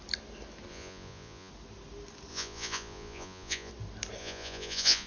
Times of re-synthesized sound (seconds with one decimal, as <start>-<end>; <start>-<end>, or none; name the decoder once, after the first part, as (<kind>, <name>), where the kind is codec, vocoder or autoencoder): 0.7-1.5 (vocoder, Vocos); 2.3-3.7; 4.2-5.1

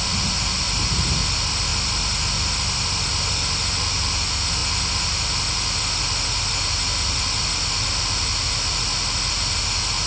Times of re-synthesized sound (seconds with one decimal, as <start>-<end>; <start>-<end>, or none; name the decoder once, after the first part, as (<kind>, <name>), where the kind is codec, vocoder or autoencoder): none

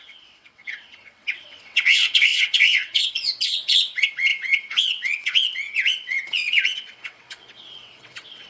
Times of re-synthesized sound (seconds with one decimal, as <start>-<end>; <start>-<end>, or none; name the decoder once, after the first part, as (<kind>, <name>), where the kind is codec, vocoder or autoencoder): 0.0-8.5 (vocoder, WaveNeXt)